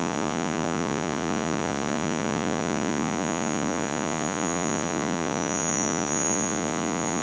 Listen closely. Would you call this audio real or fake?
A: fake